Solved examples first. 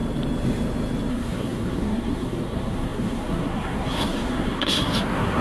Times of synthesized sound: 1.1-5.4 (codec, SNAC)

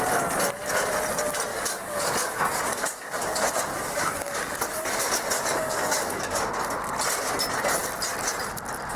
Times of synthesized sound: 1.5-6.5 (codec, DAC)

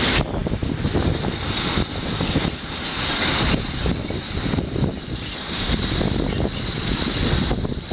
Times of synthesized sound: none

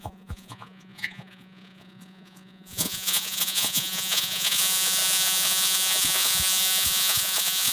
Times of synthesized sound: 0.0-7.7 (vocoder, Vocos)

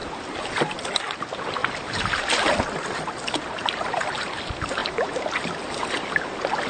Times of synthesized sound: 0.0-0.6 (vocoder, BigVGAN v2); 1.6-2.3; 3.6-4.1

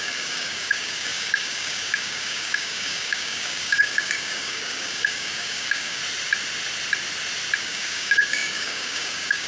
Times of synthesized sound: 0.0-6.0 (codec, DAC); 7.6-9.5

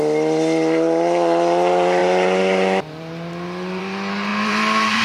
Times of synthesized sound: 0.0-5.0 (vocoder, BigVGAN v2)